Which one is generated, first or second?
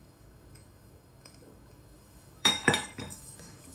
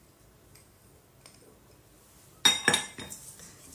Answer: first